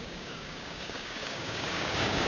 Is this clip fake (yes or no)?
yes